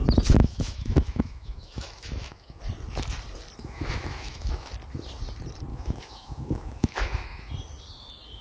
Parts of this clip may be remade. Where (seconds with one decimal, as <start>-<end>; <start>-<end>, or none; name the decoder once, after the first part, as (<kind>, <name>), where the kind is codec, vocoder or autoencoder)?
0.4-2.6 (autoencoder, DAC-VAE); 3.6-4.7; 5.7-7.5